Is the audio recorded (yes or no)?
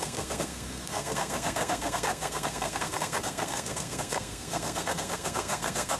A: no